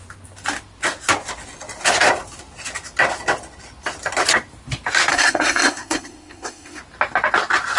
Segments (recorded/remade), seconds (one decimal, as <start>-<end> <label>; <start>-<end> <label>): 0.0-5.1 recorded; 5.1-6.8 remade; 6.8-7.8 recorded